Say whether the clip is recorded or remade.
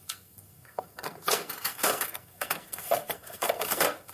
remade